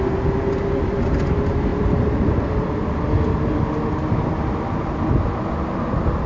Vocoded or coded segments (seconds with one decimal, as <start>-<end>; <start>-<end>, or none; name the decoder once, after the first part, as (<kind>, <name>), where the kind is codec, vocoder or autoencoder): none